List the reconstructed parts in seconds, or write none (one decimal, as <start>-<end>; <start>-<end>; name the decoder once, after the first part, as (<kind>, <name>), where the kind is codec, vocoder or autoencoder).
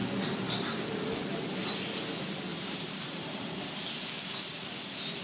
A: 2.5-3.4 (vocoder, BigVGAN v2)